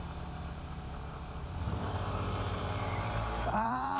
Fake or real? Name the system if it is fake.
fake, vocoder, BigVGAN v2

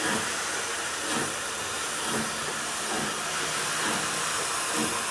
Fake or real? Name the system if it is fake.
real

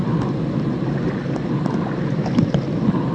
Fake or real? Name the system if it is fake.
real